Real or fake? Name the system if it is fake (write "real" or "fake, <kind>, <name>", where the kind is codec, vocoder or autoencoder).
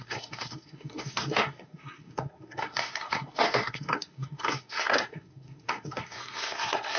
fake, codec, SNAC